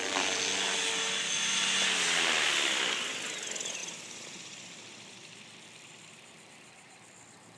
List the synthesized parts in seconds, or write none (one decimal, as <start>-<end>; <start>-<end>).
none